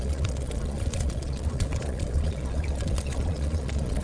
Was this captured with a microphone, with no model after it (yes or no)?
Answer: no